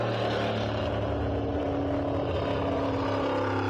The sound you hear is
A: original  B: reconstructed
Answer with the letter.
A